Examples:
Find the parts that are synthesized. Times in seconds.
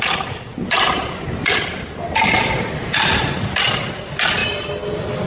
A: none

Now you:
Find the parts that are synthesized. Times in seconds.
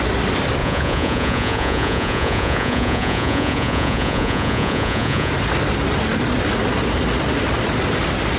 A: 0.6-5.3 (vocoder, Vocos)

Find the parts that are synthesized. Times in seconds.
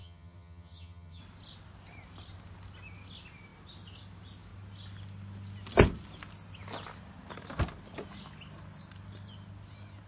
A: 0.0-1.2 (vocoder, HiFi-GAN)